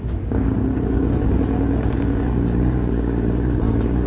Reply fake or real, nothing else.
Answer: fake